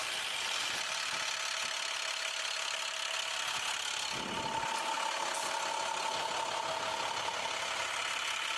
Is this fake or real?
real